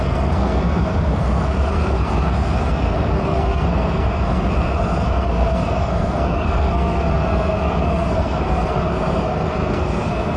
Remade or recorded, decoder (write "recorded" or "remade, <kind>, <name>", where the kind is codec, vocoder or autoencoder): remade, codec, SNAC